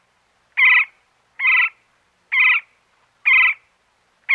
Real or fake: real